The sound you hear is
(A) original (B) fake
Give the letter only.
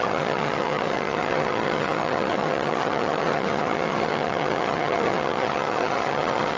B